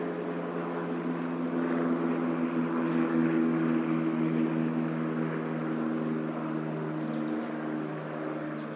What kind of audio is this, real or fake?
real